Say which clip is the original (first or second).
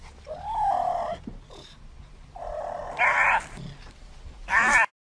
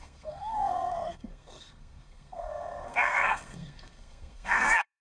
first